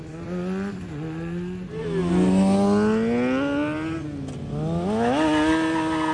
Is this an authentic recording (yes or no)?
yes